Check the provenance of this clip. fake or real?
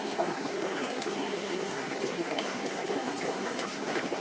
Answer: fake